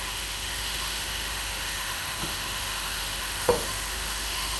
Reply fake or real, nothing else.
fake